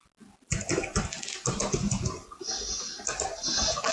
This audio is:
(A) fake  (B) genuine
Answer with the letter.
B